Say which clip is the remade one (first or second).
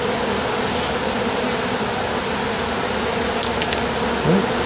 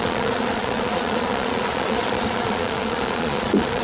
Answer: second